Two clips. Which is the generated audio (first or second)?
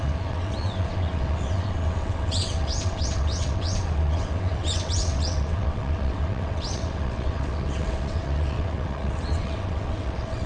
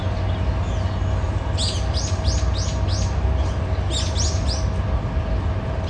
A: first